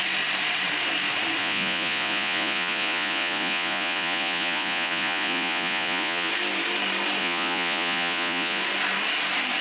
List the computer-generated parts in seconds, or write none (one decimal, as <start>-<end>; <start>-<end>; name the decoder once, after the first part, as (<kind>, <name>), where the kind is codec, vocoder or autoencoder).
1.4-6.3 (vocoder, Vocos); 7.2-8.6